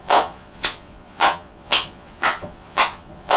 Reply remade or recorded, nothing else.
remade